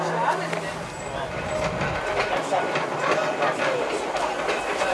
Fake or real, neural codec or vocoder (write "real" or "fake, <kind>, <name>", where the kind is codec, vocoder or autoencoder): real